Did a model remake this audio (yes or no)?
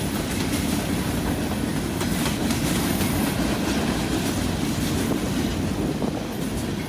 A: no